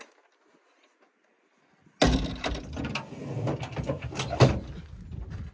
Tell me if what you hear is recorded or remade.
recorded